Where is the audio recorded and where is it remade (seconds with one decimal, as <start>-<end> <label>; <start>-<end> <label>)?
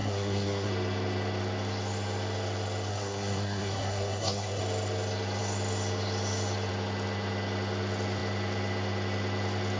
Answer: 0.0-0.7 remade; 0.7-2.9 recorded; 2.9-4.6 remade; 4.6-9.8 recorded